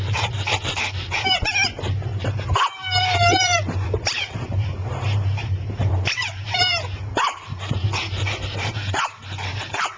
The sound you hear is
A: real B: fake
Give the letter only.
B